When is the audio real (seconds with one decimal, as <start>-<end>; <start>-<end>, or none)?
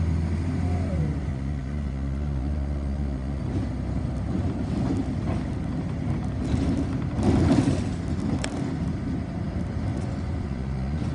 0.0-1.3; 3.4-9.9